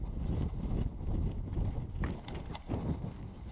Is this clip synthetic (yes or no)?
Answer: no